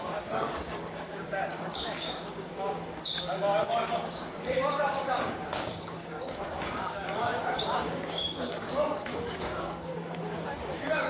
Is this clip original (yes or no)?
no